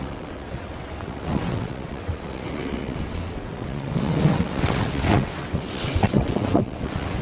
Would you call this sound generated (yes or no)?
yes